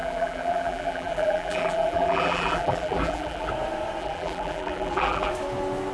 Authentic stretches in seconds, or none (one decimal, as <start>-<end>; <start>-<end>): 3.5-4.0; 5.3-5.9